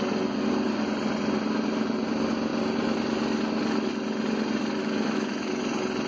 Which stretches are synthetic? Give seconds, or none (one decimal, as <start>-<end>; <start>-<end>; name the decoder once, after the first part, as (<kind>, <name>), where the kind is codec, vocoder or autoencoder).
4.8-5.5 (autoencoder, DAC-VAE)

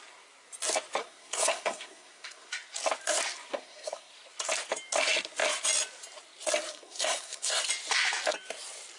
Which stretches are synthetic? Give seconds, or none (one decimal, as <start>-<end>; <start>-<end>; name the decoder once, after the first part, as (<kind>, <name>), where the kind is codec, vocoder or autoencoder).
1.0-2.5 (codec, SNAC); 3.5-4.1; 6.7-7.6

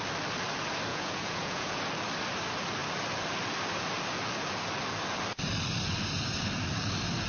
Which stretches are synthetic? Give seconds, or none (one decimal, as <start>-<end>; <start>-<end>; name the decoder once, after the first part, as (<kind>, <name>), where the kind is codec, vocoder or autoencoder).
0.9-1.8 (vocoder, Vocos)

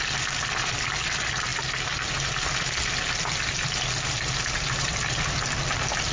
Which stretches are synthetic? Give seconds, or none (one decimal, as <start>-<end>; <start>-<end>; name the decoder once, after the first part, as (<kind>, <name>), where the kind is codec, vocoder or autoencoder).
none